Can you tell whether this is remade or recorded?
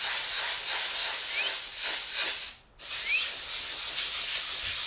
recorded